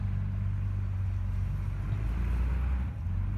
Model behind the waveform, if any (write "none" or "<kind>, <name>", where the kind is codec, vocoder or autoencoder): none